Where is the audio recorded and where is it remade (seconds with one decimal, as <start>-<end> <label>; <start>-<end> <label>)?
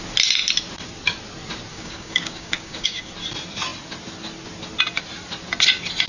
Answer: 0.0-1.7 recorded; 1.7-3.1 remade; 3.1-6.1 recorded